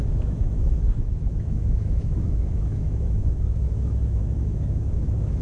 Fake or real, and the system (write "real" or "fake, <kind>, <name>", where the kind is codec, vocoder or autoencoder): fake, autoencoder, DAC-VAE